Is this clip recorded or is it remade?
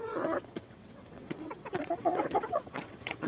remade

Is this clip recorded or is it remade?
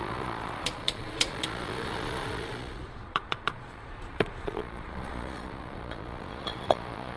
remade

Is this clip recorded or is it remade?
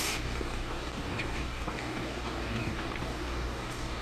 remade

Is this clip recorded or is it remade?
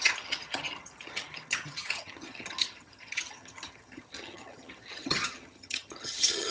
remade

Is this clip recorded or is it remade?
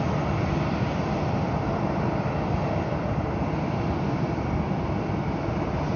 remade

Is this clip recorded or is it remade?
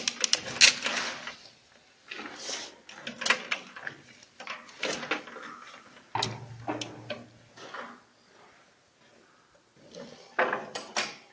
recorded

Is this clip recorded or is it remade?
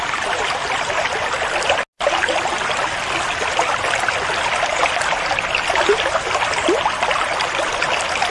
recorded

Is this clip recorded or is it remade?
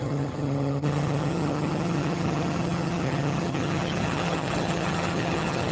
remade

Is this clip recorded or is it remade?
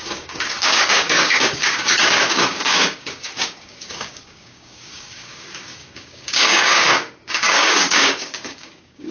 remade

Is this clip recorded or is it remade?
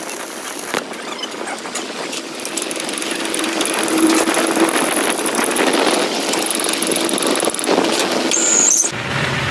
recorded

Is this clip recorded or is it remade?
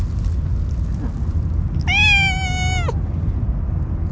recorded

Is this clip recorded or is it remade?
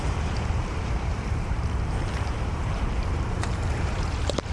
remade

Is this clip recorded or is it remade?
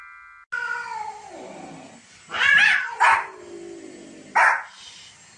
recorded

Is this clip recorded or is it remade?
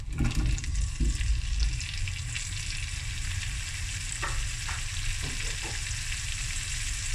recorded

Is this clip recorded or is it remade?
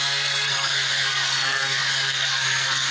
remade